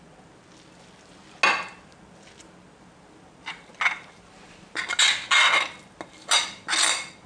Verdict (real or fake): real